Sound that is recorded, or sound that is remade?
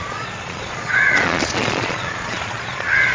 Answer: remade